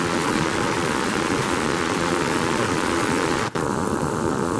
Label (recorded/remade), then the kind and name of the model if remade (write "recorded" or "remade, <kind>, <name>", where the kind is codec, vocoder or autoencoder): remade, vocoder, Vocos